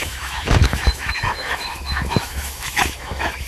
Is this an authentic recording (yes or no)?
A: no